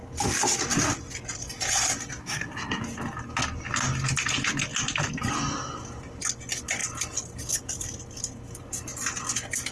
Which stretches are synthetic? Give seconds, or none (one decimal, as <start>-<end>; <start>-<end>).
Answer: 2.2-2.8